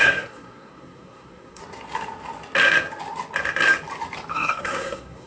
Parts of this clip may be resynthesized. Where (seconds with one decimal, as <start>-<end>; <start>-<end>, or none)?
0.0-1.6; 4.3-5.3